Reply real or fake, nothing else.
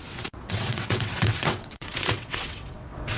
fake